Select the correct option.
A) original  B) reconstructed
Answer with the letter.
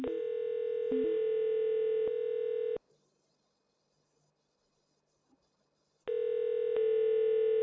A